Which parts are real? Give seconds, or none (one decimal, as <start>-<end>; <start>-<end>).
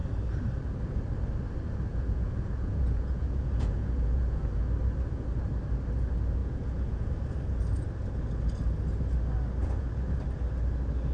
0.0-1.9; 4.6-6.4; 7.1-9.6; 10.2-11.1